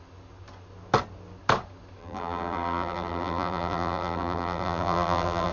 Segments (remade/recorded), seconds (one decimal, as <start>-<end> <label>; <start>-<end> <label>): 0.0-2.0 recorded; 2.0-5.5 remade